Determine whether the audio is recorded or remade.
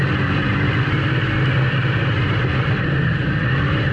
recorded